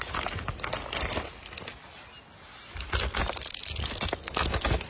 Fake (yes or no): no